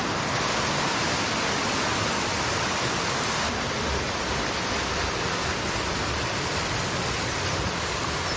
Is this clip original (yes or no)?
yes